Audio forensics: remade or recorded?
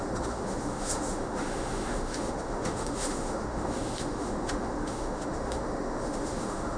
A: remade